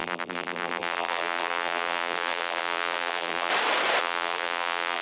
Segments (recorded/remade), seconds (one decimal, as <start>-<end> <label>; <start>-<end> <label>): 0.0-3.5 remade; 3.5-4.0 recorded; 4.0-5.0 remade